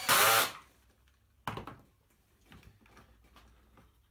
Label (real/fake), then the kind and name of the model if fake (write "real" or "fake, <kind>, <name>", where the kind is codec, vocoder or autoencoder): real